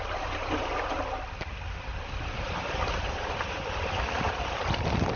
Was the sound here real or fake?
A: real